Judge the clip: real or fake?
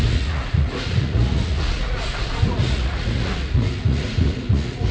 fake